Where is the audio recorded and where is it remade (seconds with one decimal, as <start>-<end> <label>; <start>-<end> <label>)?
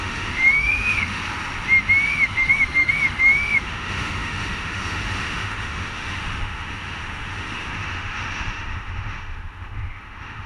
0.0-1.2 remade; 1.2-2.1 recorded; 2.1-10.5 remade